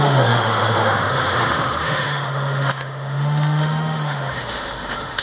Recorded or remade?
remade